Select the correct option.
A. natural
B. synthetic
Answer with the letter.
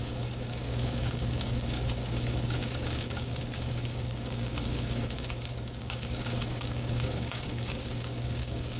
B